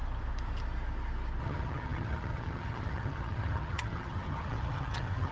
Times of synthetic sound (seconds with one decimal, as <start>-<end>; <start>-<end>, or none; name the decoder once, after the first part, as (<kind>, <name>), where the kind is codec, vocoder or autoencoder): 1.4-5.3 (vocoder, HiFi-GAN)